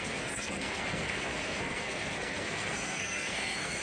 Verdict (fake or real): fake